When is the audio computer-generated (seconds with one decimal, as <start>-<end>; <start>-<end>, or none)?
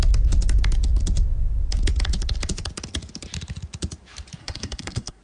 4.4-5.2